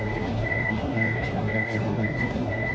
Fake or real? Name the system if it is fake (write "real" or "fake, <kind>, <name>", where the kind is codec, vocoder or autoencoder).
fake, codec, SNAC